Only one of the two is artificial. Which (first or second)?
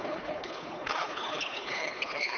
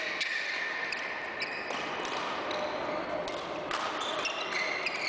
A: first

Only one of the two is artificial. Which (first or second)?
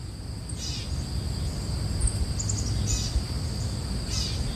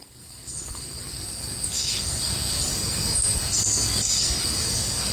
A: second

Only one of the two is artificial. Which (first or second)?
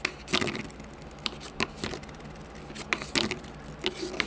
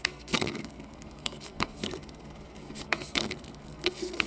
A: second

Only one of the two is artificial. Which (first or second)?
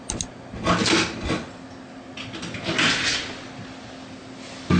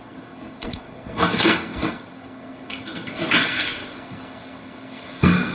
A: second